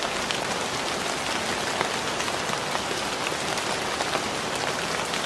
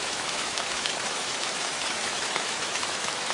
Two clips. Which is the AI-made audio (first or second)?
second